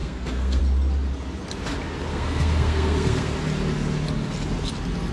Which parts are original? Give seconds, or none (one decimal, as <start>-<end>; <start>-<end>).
0.6-2.1; 3.3-5.1